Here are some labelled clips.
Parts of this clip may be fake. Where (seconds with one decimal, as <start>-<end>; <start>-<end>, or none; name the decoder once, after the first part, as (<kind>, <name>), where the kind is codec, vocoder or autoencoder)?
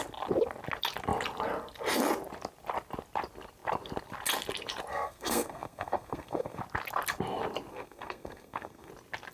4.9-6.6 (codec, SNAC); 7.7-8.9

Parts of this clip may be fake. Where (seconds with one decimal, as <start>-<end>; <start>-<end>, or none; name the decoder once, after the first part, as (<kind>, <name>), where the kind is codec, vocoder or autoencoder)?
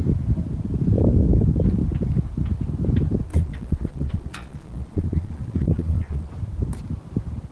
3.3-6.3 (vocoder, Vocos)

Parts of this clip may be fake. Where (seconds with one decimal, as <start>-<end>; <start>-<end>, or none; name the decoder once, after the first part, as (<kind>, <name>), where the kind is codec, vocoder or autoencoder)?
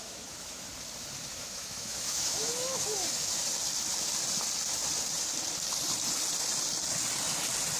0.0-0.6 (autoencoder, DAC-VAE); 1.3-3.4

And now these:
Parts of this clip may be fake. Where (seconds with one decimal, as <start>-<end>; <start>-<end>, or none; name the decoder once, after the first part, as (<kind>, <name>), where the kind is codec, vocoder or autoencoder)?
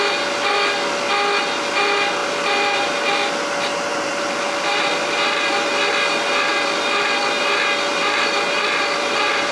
2.2-2.9 (vocoder, BigVGAN v2); 3.9-5.8; 6.5-7.4; 7.9-9.5